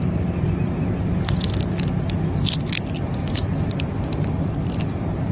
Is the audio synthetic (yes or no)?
no